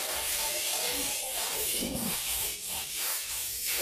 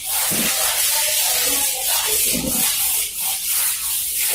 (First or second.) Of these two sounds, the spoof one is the first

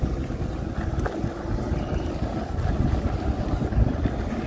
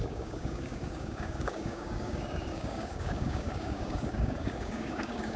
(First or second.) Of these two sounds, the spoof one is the second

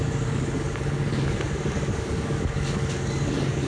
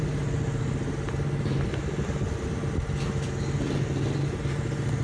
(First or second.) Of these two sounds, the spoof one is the first